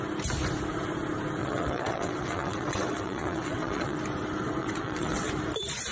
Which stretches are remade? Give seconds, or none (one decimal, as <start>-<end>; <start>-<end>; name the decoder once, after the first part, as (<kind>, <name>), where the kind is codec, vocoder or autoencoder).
1.4-4.0 (vocoder, WaveNeXt); 4.6-5.3